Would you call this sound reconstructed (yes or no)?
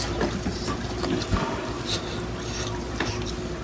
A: no